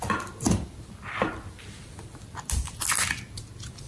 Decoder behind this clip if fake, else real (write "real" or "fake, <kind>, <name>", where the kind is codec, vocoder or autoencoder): real